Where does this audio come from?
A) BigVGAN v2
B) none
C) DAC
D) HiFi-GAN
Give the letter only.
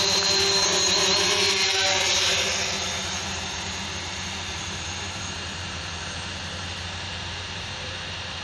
A